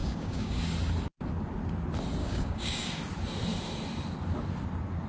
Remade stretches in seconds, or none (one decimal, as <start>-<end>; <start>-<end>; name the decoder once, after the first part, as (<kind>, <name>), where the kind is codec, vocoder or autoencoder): 0.0-0.6 (codec, DAC); 2.2-2.9